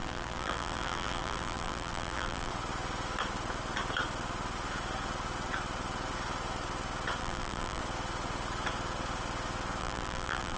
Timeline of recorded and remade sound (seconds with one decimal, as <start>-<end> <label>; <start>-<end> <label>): 0.0-2.5 remade; 2.5-7.2 recorded; 7.2-7.8 remade; 7.8-9.8 recorded; 9.8-10.6 remade